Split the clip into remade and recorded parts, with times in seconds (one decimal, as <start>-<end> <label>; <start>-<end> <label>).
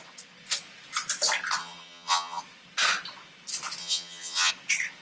0.0-1.6 recorded; 1.6-2.4 remade; 2.4-3.8 recorded; 3.8-4.5 remade; 4.5-5.0 recorded